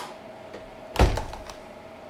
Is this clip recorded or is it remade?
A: recorded